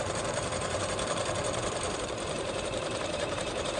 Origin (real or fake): fake